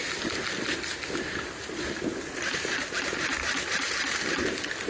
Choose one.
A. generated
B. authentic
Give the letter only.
B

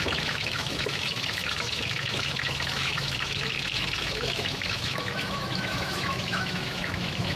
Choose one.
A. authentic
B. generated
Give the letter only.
B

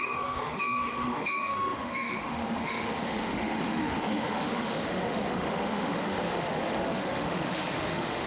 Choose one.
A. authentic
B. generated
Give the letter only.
B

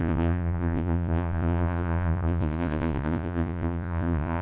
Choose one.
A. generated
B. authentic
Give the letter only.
A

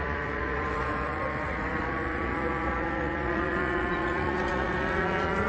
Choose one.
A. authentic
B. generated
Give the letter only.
B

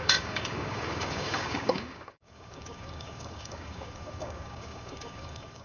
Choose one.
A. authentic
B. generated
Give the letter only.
B